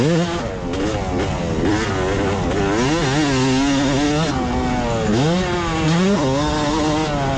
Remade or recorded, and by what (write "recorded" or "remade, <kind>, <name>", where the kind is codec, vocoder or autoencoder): recorded